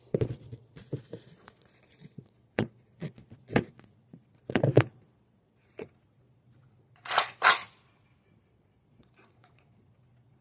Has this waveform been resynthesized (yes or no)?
yes